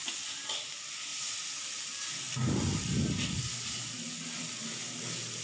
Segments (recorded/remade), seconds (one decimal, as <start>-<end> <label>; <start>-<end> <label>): 0.0-5.4 recorded